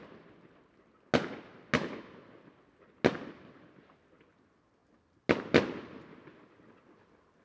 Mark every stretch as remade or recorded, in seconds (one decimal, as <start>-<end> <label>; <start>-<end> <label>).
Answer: 0.0-7.4 recorded